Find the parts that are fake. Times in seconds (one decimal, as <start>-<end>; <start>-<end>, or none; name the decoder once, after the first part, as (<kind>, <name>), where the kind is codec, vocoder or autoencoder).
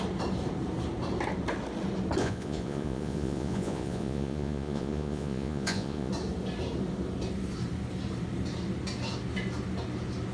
2.2-6.1 (vocoder, Vocos)